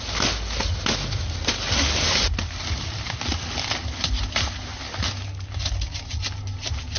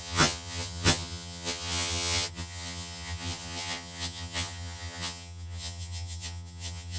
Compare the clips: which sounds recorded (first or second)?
first